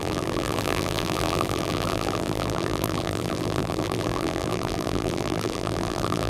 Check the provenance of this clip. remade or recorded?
remade